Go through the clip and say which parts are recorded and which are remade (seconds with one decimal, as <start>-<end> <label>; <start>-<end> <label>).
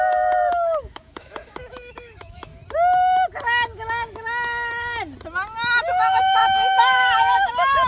0.0-2.5 remade; 2.5-5.8 recorded; 5.8-7.9 remade